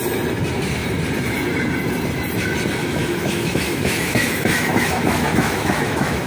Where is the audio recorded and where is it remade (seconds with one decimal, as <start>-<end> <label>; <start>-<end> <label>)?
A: 0.0-2.8 recorded; 2.8-6.3 remade